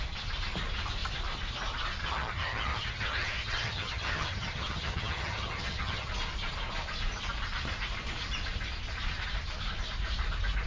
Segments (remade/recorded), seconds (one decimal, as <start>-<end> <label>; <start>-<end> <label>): 0.0-2.0 recorded; 2.0-6.1 remade; 6.1-10.7 recorded